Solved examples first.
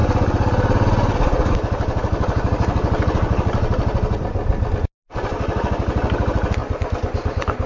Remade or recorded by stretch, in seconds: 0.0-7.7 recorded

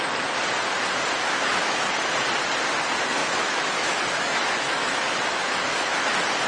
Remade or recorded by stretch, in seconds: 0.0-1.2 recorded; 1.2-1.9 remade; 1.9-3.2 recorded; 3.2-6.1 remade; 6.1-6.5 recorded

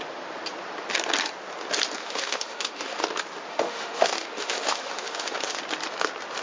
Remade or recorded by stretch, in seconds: 0.0-2.0 recorded; 2.0-3.0 remade; 3.0-3.5 recorded; 3.5-5.6 remade; 5.6-6.4 recorded

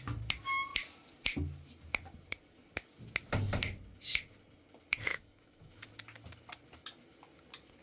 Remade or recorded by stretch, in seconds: 0.0-5.1 recorded; 5.1-5.7 remade; 5.7-7.8 recorded